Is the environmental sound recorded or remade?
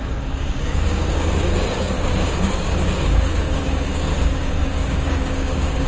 remade